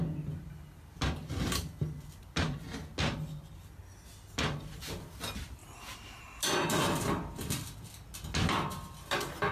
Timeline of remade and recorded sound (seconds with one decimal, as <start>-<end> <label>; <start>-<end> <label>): 0.0-9.5 recorded